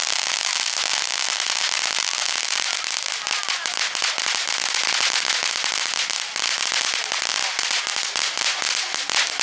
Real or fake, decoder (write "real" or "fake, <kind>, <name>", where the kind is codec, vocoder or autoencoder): real